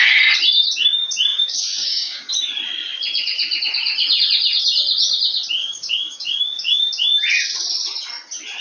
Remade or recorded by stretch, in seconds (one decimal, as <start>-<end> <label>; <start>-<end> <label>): 0.0-1.3 recorded; 1.3-2.3 remade; 2.3-5.6 recorded; 5.6-6.9 remade; 6.9-8.6 recorded